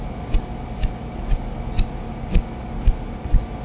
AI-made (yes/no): no